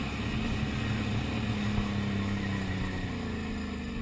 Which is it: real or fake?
real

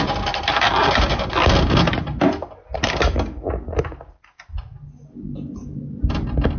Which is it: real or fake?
real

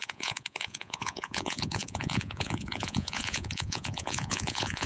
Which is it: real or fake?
fake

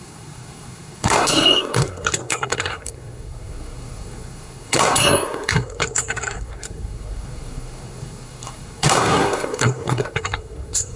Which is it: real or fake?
fake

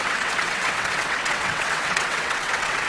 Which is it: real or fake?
fake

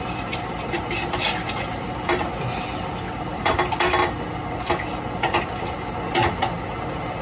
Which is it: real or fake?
real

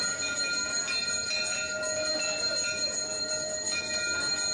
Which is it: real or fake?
real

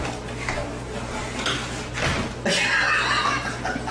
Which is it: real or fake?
real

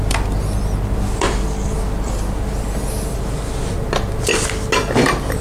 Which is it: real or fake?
real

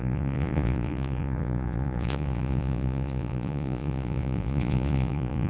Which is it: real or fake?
fake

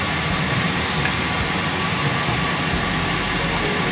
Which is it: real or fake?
real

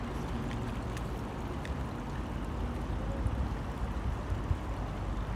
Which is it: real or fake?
real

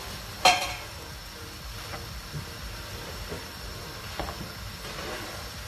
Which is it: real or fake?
fake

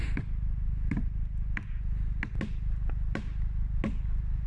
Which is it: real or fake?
real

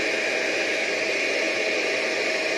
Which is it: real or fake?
real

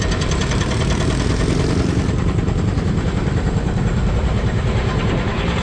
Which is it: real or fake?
fake